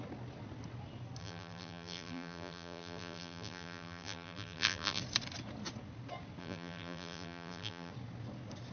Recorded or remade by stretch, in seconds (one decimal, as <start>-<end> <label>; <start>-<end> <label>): 0.0-1.2 recorded; 1.2-5.0 remade; 5.0-6.4 recorded; 6.4-7.9 remade; 7.9-8.7 recorded

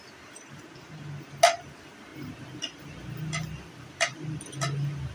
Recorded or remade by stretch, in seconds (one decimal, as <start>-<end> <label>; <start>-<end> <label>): 0.0-5.1 recorded

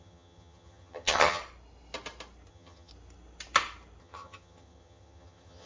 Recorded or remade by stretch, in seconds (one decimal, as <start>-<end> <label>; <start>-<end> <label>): 0.0-1.4 remade; 1.4-2.5 recorded; 2.5-2.9 remade; 2.9-4.0 recorded; 4.0-5.7 remade

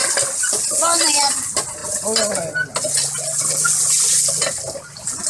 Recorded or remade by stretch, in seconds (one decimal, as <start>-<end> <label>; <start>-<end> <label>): 0.0-1.0 recorded; 1.0-1.8 remade; 1.8-5.3 recorded

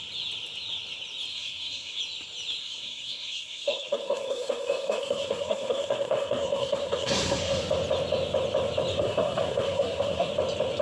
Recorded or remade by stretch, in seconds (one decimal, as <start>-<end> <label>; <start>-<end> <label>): 0.0-1.3 recorded; 1.3-2.0 remade; 2.0-2.6 recorded; 2.6-7.6 remade; 7.6-8.9 recorded; 8.9-10.3 remade; 10.3-10.8 recorded

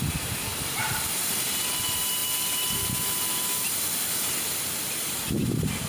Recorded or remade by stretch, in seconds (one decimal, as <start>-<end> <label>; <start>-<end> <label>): 0.0-0.5 recorded; 0.5-1.3 remade; 1.3-5.9 recorded

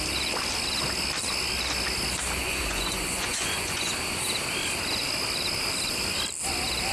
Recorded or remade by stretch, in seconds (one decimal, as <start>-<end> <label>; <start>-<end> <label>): 0.0-2.4 recorded; 2.4-3.9 remade; 3.9-6.9 recorded

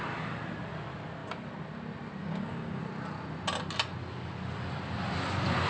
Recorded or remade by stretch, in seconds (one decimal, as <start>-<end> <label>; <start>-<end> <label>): 0.0-2.2 recorded; 2.2-2.8 remade; 2.8-5.7 recorded